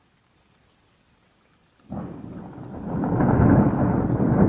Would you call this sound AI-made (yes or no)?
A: no